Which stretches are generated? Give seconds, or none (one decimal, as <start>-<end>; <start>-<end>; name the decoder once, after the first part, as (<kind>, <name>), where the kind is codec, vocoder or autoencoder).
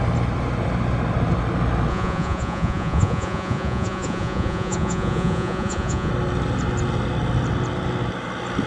1.9-6.1 (vocoder, Vocos)